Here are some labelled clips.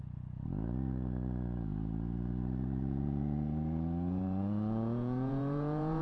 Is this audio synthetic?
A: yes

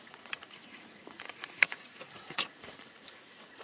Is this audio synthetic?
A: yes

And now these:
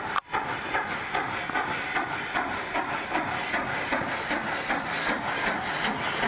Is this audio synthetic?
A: no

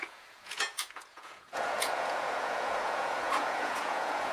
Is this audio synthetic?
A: yes